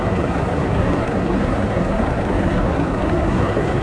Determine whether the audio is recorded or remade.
remade